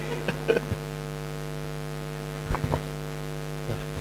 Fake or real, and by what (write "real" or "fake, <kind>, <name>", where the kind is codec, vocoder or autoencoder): real